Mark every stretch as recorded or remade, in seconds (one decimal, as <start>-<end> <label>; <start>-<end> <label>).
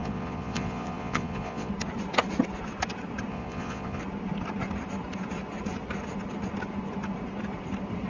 0.0-1.7 remade; 1.7-3.3 recorded; 3.3-4.0 remade; 4.0-8.1 recorded